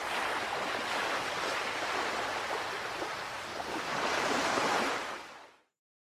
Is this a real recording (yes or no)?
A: yes